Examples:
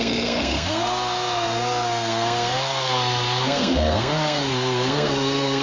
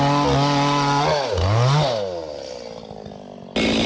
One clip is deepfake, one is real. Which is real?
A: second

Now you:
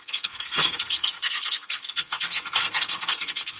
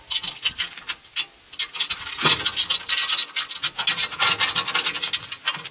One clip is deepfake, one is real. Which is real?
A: second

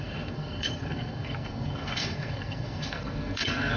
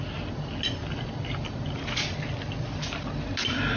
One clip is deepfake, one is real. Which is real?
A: second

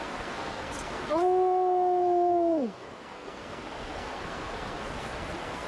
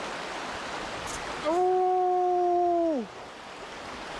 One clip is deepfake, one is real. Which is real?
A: second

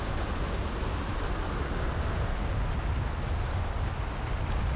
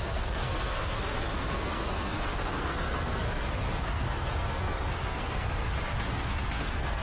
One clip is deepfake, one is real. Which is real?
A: first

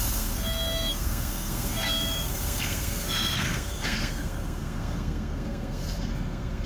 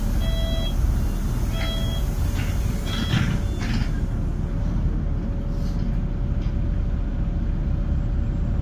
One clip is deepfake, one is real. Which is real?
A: second